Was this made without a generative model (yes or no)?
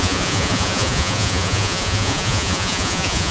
no